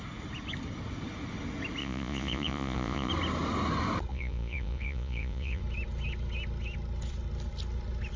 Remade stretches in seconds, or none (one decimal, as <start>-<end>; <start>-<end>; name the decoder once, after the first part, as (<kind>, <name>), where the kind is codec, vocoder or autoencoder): 1.8-3.1 (vocoder, Vocos); 4.1-5.6